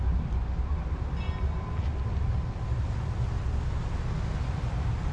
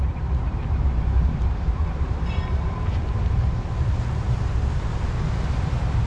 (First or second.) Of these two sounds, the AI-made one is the second